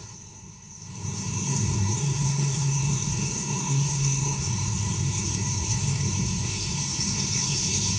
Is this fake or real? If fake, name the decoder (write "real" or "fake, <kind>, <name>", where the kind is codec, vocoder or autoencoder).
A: fake, codec, SNAC